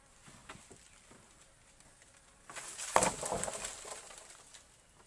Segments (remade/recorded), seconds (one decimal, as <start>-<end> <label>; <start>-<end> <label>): 0.0-5.1 recorded

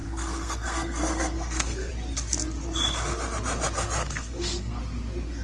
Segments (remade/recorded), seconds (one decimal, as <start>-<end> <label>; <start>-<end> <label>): 0.0-1.9 remade; 1.9-4.0 recorded; 4.0-4.8 remade; 4.8-5.4 recorded

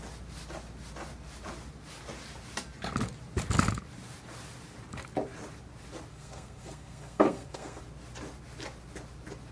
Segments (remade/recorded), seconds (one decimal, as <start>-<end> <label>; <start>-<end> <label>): 0.0-6.1 recorded; 6.1-7.8 remade; 7.8-9.5 recorded

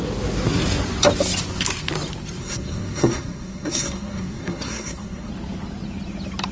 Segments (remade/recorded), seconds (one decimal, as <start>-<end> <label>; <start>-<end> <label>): 0.0-2.4 recorded; 2.4-5.3 remade; 5.3-6.5 recorded

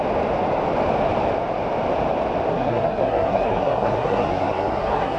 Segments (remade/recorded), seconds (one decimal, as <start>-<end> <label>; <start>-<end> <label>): 0.0-2.5 recorded; 2.5-5.2 remade